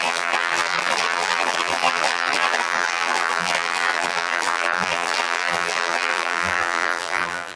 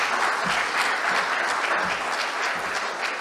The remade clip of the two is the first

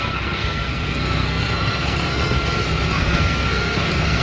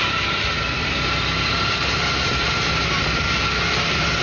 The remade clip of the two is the first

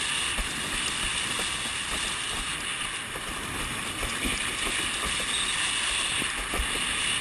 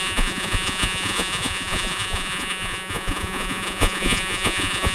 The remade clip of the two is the second